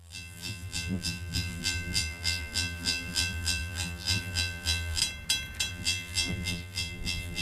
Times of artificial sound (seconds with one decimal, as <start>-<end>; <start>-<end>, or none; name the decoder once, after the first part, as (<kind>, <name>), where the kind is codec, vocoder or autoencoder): 0.0-5.0 (vocoder, BigVGAN v2); 5.7-7.4